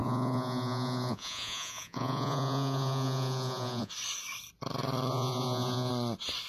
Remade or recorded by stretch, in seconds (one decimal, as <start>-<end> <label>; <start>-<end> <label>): 0.0-3.9 remade; 3.9-5.1 recorded; 5.1-5.9 remade; 5.9-6.5 recorded